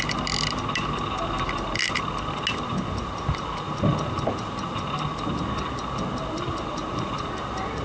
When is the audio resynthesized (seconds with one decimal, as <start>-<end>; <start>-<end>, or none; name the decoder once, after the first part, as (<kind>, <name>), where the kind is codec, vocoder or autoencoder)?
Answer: 6.8-7.3 (vocoder, Vocos)